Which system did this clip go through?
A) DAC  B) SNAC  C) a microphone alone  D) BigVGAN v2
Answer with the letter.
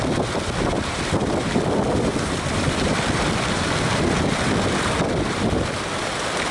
D